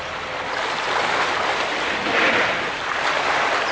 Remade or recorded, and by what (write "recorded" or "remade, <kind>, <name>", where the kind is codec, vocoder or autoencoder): recorded